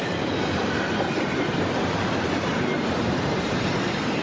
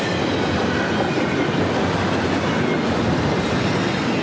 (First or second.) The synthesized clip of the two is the first